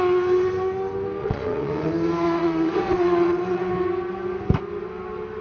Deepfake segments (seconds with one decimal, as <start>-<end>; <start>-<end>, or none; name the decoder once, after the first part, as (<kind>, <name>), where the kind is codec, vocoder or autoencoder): 1.2-1.9 (vocoder, WaveNeXt); 2.4-3.7